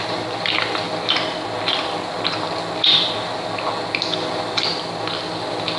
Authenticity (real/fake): real